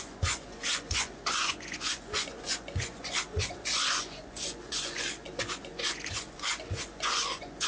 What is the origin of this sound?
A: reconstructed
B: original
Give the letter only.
A